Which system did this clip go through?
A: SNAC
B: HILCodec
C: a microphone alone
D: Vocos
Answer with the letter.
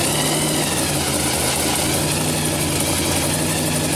C